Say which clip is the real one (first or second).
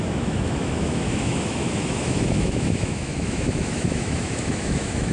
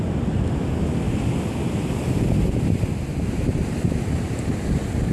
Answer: second